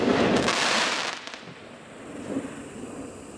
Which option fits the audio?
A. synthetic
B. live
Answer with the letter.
B